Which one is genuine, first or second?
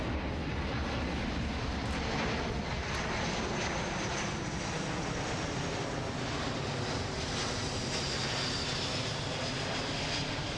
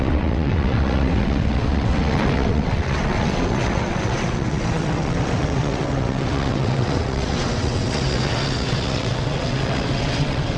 first